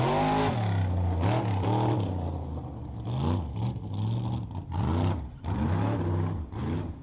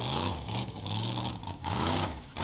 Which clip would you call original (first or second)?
first